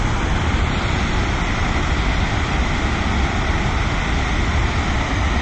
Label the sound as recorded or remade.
recorded